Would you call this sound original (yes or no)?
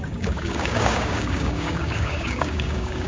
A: no